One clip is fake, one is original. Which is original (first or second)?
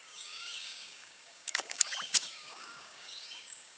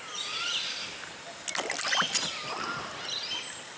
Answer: second